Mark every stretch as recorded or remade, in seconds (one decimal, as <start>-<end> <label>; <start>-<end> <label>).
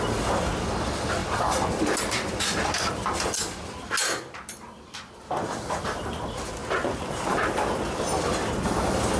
0.0-9.2 recorded